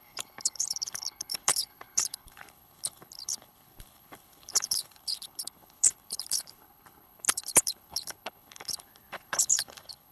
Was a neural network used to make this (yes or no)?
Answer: yes